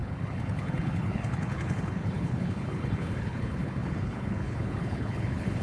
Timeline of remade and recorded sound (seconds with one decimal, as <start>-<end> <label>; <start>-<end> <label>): 0.0-5.6 remade